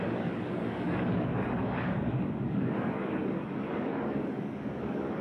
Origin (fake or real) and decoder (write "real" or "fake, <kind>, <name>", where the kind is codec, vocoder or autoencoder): fake, codec, DAC